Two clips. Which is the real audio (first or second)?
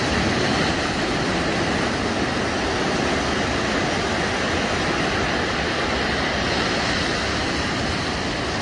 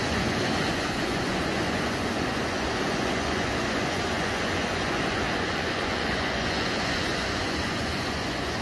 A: first